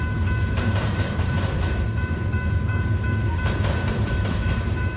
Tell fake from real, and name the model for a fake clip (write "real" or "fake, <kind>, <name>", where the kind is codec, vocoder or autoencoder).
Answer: fake, vocoder, BigVGAN v2